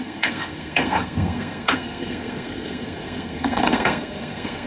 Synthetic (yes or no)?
yes